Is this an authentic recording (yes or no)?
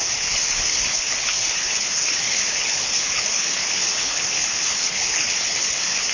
no